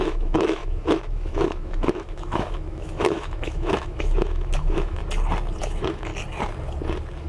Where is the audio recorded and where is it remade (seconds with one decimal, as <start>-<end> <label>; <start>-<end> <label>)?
0.0-5.0 remade; 5.0-5.6 recorded; 5.6-6.1 remade; 6.1-7.3 recorded